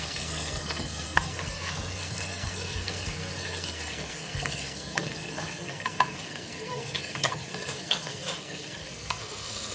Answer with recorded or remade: remade